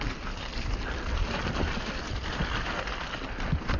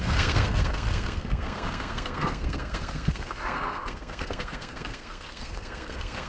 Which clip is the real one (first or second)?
first